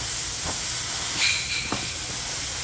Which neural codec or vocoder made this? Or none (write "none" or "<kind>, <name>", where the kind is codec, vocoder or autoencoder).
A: none